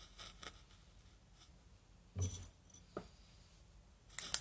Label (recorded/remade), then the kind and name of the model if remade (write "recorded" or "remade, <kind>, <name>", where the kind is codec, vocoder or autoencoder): recorded